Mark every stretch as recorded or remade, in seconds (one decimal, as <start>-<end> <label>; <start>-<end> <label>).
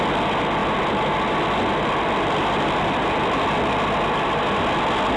0.0-5.2 recorded